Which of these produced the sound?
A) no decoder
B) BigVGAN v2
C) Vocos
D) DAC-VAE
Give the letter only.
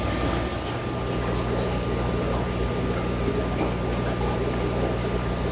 A